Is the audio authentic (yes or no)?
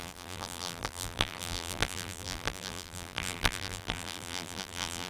no